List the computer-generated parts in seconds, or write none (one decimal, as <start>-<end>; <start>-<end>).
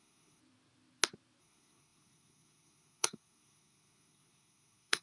0.0-0.4; 1.4-5.0